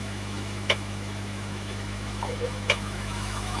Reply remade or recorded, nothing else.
remade